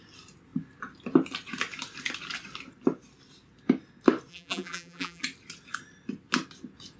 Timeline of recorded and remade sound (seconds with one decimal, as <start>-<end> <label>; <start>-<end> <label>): 0.0-4.3 recorded; 4.3-5.2 remade; 5.2-7.0 recorded